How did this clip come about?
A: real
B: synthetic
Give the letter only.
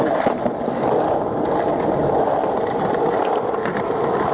A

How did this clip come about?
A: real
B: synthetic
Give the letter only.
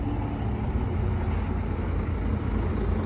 A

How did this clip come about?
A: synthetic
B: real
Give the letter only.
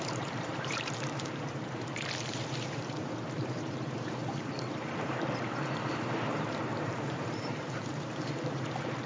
A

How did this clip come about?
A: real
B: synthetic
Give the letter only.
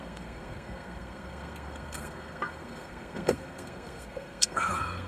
B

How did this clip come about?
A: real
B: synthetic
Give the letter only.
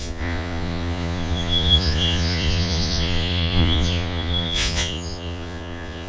B